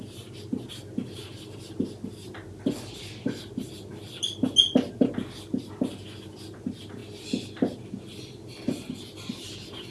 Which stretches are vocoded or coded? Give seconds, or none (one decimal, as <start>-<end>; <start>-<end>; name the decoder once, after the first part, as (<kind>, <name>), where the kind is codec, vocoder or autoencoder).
none

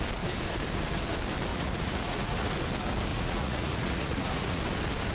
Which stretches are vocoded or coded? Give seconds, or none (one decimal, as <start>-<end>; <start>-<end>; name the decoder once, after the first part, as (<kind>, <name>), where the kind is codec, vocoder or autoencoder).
1.5-2.5 (vocoder, Vocos); 3.1-4.6

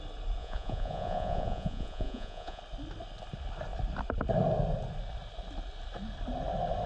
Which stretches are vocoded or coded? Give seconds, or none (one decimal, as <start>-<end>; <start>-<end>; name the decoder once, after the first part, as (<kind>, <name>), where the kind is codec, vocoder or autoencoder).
0.4-2.6 (vocoder, Vocos)

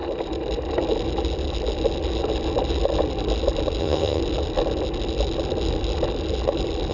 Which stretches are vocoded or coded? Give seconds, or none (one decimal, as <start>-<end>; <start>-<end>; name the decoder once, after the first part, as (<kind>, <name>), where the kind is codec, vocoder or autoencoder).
3.8-4.2 (vocoder, HiFi-GAN)

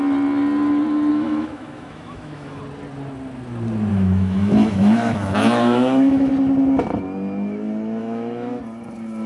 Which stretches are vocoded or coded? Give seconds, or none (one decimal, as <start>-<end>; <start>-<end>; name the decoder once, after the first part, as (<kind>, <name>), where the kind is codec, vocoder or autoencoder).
1.1-2.6 (autoencoder, DAC-VAE); 3.9-6.3; 8.0-8.6

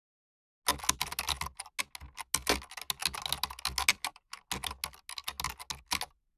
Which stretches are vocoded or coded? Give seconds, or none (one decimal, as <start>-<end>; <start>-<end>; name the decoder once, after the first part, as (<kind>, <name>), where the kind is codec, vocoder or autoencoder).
none

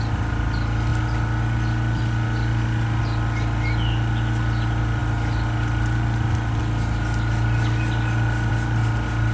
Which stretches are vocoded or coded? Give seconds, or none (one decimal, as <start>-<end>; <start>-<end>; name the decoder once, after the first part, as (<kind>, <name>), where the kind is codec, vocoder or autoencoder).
none

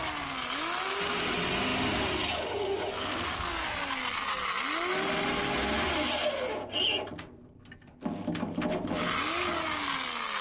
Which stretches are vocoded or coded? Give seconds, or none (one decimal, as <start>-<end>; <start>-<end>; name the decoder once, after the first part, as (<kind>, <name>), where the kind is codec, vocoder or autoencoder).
none